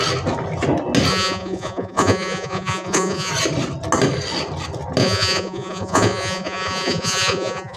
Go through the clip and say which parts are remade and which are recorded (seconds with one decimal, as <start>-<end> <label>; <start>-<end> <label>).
0.0-1.1 recorded; 1.1-3.3 remade; 3.3-5.0 recorded; 5.0-7.8 remade